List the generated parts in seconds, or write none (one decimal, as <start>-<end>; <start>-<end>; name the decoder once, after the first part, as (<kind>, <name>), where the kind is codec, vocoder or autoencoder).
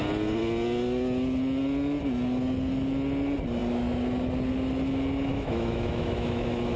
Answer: 5.3-6.8 (autoencoder, DAC-VAE)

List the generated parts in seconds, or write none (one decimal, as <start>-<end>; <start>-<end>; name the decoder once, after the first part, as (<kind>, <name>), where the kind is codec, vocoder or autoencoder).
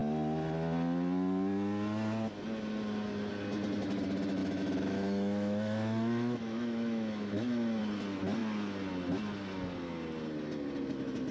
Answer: 4.4-7.8 (autoencoder, DAC-VAE)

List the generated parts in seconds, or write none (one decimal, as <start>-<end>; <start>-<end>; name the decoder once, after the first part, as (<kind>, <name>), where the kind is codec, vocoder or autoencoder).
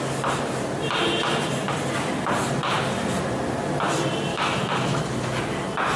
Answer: 4.3-5.0 (autoencoder, DAC-VAE)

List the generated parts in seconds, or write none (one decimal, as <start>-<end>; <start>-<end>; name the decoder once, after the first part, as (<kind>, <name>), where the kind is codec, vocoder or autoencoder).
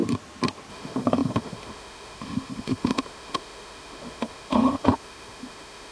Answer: 0.7-5.9 (autoencoder, DAC-VAE)